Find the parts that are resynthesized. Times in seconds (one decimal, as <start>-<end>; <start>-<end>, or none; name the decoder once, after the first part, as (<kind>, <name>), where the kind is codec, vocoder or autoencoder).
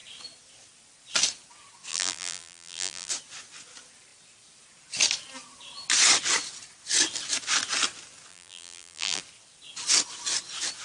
1.9-3.1 (vocoder, BigVGAN v2); 8.3-9.2